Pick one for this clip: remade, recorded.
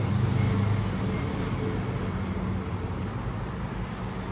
recorded